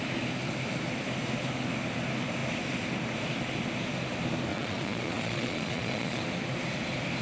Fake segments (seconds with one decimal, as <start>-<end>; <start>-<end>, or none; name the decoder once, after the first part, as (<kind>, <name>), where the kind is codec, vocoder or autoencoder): 4.5-6.2 (vocoder, Vocos)